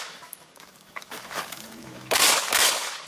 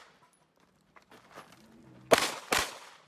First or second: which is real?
second